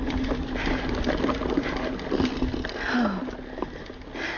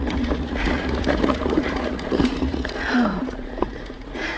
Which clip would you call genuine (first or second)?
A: first